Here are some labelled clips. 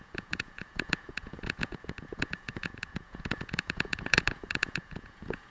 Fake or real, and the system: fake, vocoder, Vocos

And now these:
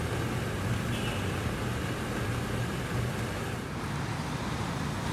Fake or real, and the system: real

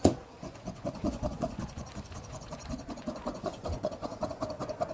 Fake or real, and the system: fake, vocoder, Vocos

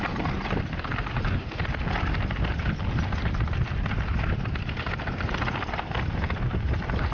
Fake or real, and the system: real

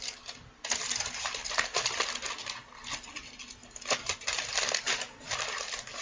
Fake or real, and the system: real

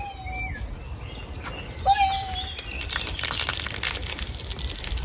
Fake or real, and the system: real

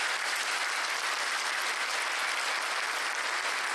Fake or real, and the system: real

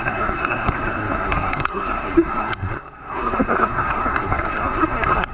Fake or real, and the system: fake, codec, SNAC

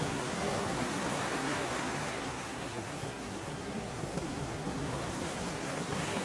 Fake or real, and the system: fake, codec, SNAC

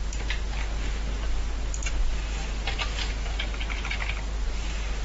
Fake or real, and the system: real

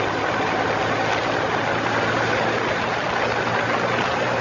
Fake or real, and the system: real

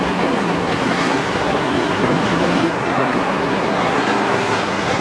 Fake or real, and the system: fake, codec, SNAC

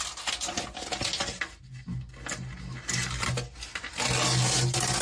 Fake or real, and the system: real